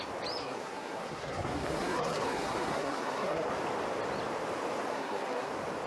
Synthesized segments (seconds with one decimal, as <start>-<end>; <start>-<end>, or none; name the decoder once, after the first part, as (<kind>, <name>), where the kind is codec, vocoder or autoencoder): 0.4-3.5 (codec, SNAC); 4.9-5.5